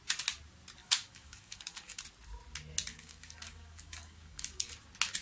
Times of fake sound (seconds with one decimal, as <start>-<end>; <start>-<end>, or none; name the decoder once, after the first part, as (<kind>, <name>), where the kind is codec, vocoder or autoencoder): 0.8-2.0 (codec, DAC); 2.9-4.7

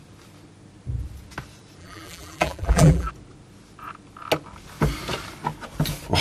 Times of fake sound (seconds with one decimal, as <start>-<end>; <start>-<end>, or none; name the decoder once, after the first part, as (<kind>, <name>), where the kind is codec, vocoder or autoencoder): 1.8-3.1 (vocoder, BigVGAN v2)

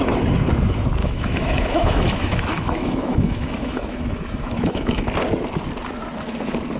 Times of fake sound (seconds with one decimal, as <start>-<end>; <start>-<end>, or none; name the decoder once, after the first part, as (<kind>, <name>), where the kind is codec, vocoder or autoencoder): 1.0-5.0 (autoencoder, DAC-VAE)

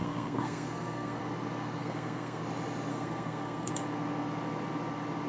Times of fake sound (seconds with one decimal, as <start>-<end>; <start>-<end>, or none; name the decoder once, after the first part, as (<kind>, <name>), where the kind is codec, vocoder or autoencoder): 0.0-1.2 (codec, SNAC); 1.8-2.4; 2.9-3.7

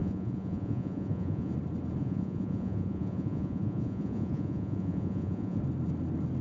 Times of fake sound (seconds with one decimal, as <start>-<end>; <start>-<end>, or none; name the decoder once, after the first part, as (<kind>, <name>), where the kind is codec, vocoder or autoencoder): 0.0-1.5 (vocoder, Vocos); 2.0-5.6

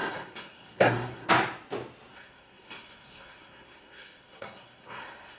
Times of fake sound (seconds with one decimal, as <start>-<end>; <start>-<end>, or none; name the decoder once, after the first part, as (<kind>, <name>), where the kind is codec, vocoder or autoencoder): 0.0-1.3 (codec, SNAC); 2.1-5.4

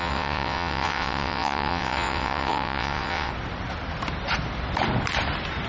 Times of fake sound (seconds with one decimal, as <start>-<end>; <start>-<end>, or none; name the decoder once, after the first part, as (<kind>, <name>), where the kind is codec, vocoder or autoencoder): 0.0-3.3 (vocoder, WaveNeXt)

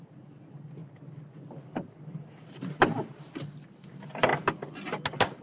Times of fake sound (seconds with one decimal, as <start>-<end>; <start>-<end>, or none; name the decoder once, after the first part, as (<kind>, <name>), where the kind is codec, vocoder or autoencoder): none